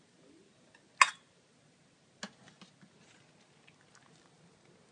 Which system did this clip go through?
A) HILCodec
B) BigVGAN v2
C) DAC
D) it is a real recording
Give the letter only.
D